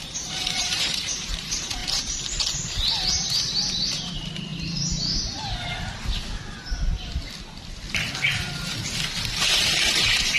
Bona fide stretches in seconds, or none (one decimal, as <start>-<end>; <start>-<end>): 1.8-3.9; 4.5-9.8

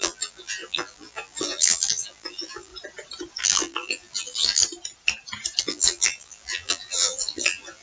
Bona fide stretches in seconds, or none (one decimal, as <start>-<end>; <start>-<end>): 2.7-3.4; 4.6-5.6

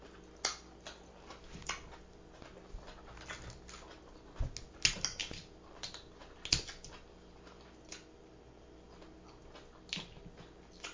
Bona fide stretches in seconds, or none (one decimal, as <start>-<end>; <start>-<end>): 0.0-10.9

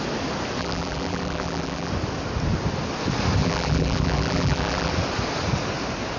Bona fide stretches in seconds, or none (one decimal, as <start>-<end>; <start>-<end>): 0.0-0.6; 1.9-3.4; 4.9-6.2

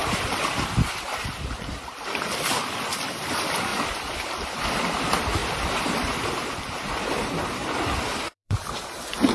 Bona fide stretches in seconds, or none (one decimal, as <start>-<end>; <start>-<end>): 7.6-8.3